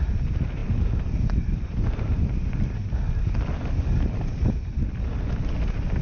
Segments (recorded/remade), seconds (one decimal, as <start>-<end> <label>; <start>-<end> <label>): 0.0-6.0 recorded